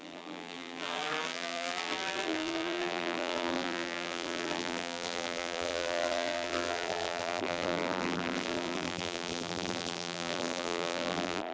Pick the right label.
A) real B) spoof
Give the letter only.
B